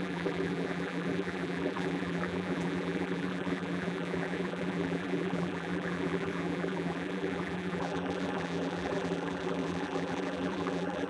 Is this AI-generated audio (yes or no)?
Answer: yes